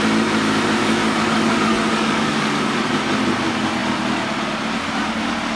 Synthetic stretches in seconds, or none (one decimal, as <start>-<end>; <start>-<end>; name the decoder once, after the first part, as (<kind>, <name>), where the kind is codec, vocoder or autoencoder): 0.8-2.7 (codec, DAC)